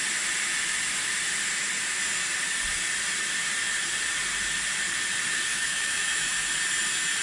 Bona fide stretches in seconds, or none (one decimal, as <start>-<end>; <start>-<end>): 0.0-5.5; 6.3-7.2